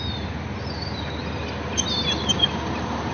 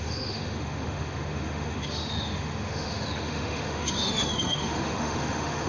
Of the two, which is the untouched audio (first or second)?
first